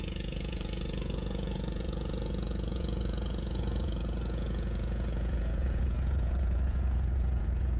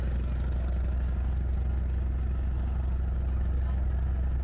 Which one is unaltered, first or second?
second